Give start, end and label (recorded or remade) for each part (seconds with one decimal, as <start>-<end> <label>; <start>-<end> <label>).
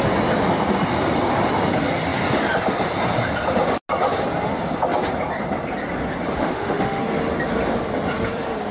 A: 0.0-6.4 recorded; 6.4-7.0 remade; 7.0-8.7 recorded